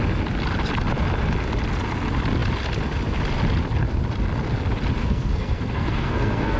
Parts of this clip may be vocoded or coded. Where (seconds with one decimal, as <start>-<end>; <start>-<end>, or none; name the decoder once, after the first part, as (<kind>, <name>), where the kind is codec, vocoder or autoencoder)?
5.0-6.6 (codec, SNAC)